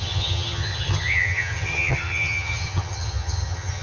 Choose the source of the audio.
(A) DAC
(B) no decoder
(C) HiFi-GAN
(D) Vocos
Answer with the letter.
C